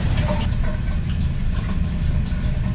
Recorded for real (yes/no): yes